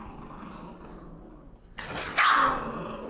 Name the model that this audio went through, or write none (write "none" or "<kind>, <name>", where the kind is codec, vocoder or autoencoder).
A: none